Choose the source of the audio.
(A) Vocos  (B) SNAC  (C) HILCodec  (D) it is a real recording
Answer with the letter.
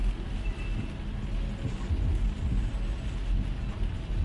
D